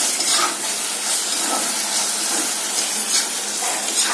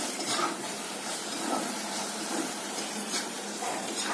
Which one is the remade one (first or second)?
second